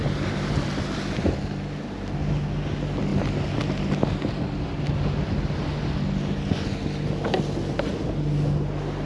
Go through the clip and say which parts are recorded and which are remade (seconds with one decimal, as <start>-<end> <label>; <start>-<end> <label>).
0.0-9.1 recorded